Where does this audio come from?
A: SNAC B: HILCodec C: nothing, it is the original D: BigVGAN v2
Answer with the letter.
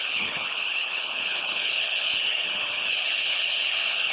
B